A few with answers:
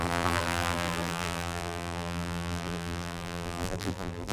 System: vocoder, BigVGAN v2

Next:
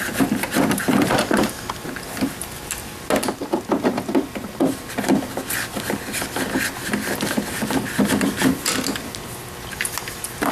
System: none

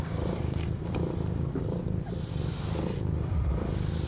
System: vocoder, BigVGAN v2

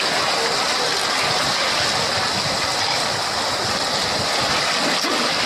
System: none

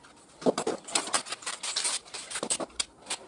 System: vocoder, BigVGAN v2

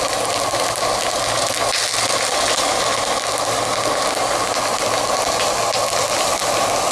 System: none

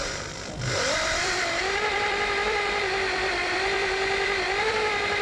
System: vocoder, BigVGAN v2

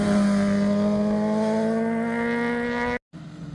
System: none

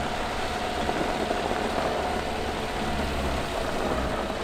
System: none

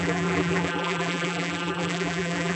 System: vocoder, BigVGAN v2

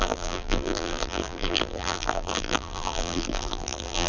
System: vocoder, BigVGAN v2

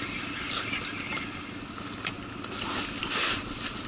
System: none